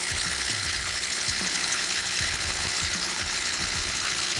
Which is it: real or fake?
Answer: fake